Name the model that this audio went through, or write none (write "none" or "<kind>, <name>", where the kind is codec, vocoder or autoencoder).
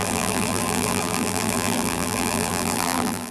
vocoder, BigVGAN v2